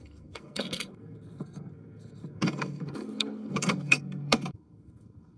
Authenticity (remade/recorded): remade